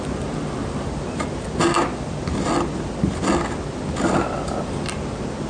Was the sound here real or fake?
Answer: real